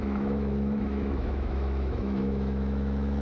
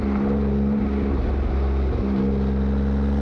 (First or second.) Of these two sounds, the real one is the second